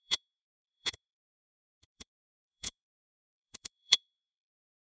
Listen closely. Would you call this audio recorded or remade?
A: remade